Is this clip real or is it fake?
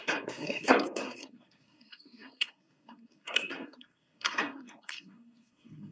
fake